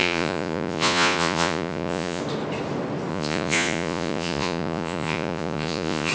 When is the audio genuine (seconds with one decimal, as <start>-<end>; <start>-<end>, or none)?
2.2-3.1